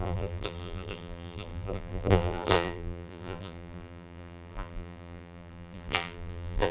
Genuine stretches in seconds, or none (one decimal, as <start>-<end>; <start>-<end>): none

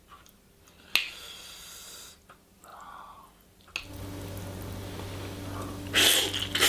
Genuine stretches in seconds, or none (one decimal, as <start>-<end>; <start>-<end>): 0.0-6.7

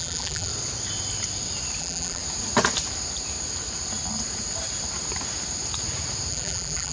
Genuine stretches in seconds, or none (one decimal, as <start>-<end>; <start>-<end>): 0.5-1.8; 2.2-6.3